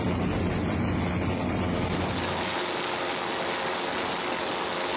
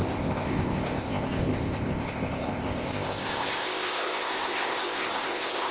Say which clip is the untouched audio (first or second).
first